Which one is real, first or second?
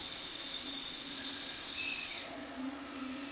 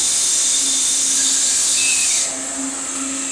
second